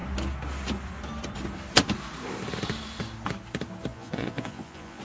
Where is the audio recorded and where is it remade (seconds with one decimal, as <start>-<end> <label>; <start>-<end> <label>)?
0.0-3.9 recorded; 3.9-5.0 remade